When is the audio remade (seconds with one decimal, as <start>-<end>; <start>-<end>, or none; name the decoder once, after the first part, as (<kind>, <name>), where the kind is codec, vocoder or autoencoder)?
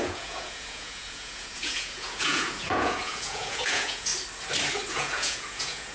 0.0-4.1 (vocoder, Vocos); 4.9-5.9